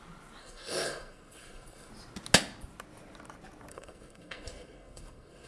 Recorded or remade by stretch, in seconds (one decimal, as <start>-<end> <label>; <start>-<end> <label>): 0.0-0.4 recorded; 0.4-1.9 remade; 1.9-3.7 recorded; 3.7-5.5 remade